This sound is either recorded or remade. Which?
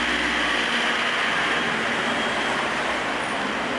recorded